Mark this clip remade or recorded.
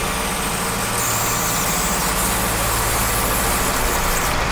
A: recorded